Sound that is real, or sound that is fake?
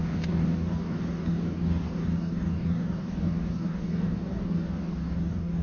fake